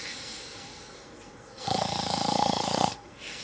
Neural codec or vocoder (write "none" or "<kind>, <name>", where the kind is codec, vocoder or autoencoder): codec, SNAC